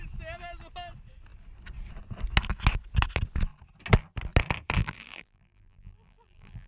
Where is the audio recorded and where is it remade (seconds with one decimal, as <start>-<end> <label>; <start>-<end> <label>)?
0.0-4.8 recorded; 4.8-6.7 remade